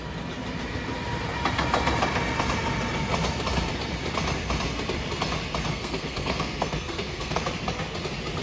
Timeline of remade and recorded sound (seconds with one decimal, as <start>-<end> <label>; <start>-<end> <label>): 0.0-5.7 recorded; 5.7-7.4 remade; 7.4-8.4 recorded